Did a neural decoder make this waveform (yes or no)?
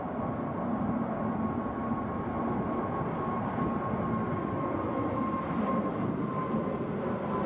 no